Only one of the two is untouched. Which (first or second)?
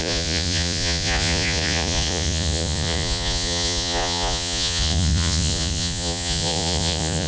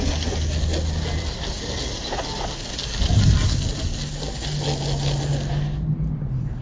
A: second